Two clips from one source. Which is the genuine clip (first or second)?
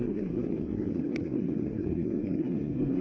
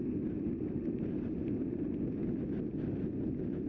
second